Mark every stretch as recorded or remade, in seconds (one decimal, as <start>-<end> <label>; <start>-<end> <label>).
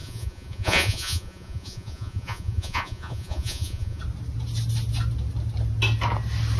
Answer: 0.0-4.0 remade; 4.0-6.6 recorded